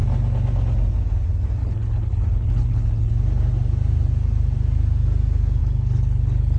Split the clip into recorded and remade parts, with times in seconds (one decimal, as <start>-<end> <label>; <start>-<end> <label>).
0.0-1.6 recorded; 1.6-3.1 remade; 3.1-5.6 recorded; 5.6-6.6 remade